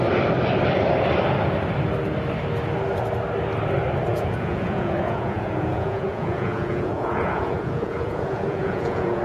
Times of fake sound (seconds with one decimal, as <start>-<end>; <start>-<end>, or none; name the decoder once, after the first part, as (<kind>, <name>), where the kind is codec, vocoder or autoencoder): 4.1-9.2 (vocoder, Vocos)